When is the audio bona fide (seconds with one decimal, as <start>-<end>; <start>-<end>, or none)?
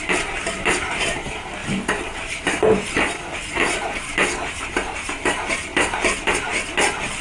0.0-0.4; 1.2-1.6; 4.7-7.2